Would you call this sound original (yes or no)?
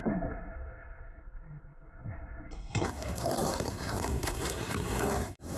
no